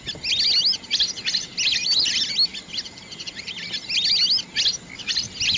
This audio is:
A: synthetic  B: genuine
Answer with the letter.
B